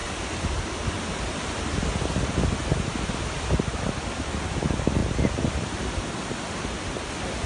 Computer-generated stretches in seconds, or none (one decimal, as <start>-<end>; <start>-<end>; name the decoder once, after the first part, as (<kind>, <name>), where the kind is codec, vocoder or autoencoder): 4.4-7.5 (vocoder, BigVGAN v2)